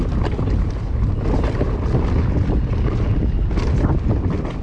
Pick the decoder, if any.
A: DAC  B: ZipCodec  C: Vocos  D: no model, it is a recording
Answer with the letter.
D